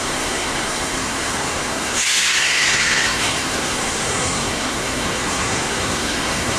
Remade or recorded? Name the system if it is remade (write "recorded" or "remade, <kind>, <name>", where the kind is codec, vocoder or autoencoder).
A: remade, codec, SNAC